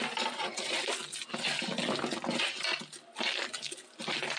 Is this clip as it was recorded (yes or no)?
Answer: yes